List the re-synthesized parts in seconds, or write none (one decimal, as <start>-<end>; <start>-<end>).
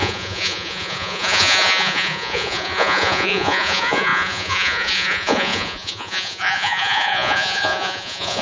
0.0-8.4